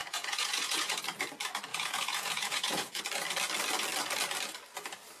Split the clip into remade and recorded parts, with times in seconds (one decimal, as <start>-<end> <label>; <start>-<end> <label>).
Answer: 0.0-1.0 remade; 1.0-1.7 recorded; 1.7-3.0 remade; 3.0-5.2 recorded

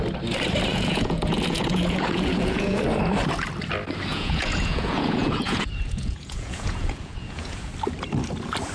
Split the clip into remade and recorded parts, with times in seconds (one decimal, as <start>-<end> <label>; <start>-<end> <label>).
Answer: 0.0-0.7 recorded; 0.7-2.8 remade; 2.8-4.1 recorded; 4.1-7.7 remade; 7.7-8.7 recorded